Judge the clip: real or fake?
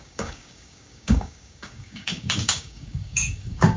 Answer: fake